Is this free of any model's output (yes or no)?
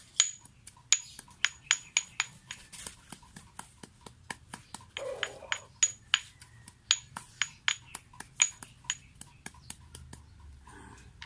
yes